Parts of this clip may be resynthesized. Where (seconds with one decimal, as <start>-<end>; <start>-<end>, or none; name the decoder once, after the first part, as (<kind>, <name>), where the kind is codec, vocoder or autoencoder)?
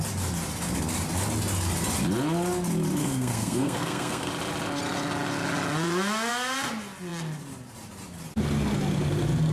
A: 3.0-4.3 (codec, SNAC)